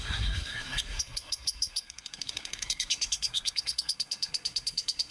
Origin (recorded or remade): remade